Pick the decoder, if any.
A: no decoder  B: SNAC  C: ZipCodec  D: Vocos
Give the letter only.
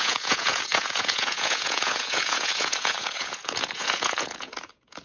D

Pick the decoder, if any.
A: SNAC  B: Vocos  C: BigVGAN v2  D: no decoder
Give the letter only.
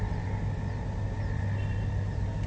D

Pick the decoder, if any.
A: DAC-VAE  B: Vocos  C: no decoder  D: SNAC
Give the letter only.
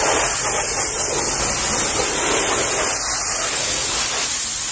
C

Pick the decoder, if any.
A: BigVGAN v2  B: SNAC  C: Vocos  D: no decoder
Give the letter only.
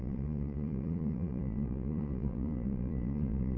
C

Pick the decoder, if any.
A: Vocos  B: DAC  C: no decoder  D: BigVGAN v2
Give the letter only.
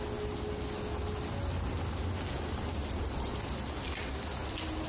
C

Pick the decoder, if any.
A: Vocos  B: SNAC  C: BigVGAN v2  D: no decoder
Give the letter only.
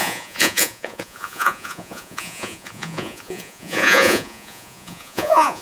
A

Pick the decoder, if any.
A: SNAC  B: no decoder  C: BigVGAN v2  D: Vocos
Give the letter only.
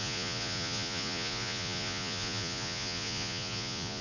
D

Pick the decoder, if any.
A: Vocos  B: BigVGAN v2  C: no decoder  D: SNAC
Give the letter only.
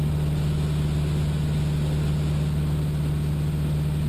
C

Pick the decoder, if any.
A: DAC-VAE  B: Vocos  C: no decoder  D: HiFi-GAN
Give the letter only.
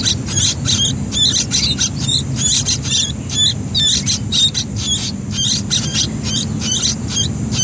C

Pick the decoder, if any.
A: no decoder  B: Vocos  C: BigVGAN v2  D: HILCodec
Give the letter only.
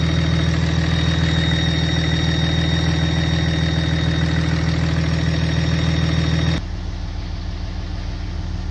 A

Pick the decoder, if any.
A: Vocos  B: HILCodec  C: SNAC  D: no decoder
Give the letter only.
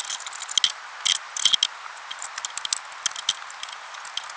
D